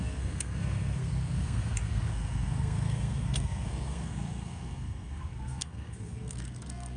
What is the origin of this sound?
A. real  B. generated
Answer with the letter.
B